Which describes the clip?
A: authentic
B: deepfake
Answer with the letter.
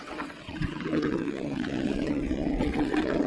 B